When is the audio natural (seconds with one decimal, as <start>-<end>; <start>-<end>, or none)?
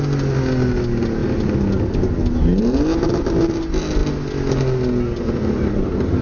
0.0-6.2